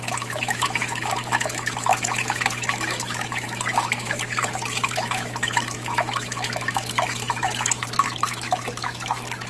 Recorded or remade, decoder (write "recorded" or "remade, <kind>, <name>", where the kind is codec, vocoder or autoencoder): remade, autoencoder, DAC-VAE